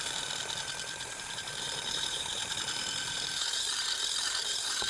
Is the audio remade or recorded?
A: remade